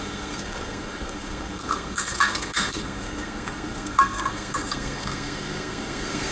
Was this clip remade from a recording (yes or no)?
yes